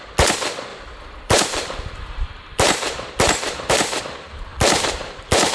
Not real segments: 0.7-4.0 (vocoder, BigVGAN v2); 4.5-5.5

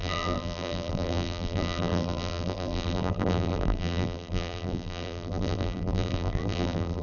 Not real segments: 0.0-7.0 (vocoder, BigVGAN v2)

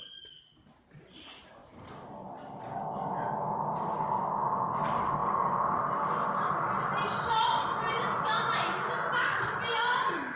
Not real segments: none

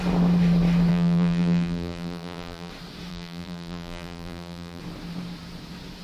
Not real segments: 0.9-2.7 (vocoder, BigVGAN v2); 3.1-4.8